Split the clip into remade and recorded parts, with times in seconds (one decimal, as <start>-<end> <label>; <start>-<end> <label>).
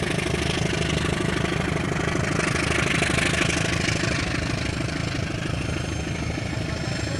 0.0-7.2 recorded